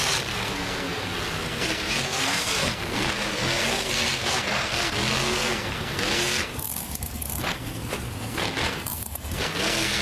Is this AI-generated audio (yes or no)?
yes